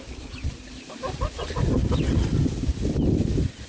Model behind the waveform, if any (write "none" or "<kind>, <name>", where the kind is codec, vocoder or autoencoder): none